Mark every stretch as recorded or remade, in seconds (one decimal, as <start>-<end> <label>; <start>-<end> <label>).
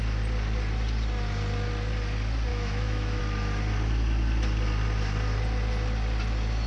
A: 0.0-2.5 recorded; 2.5-3.2 remade; 3.2-6.7 recorded